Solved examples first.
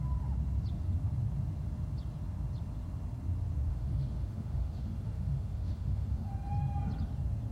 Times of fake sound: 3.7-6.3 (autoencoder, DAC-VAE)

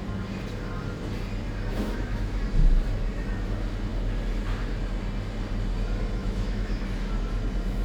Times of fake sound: 1.7-2.4 (autoencoder, DAC-VAE); 6.2-6.8

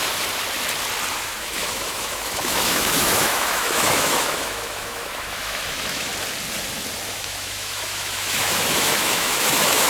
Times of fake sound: 1.1-6.1 (autoencoder, DAC-VAE); 7.1-9.9

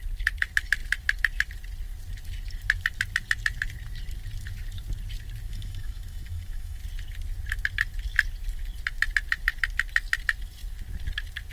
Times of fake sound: 5.5-6.8 (autoencoder, DAC-VAE)

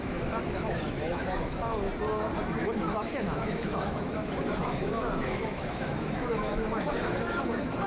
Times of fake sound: 0.0-1.9 (autoencoder, DAC-VAE); 2.6-7.9